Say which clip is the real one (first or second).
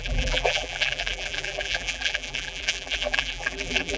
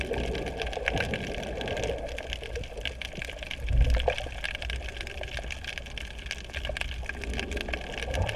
second